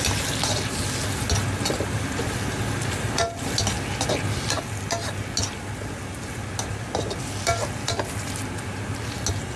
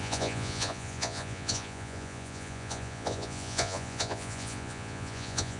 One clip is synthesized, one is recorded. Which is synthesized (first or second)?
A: second